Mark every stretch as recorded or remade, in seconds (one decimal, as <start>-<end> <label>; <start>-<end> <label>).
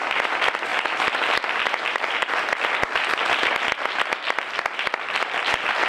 0.0-0.7 recorded; 0.7-2.1 remade; 2.1-5.9 recorded